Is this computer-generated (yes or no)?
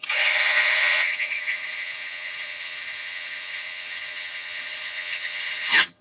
yes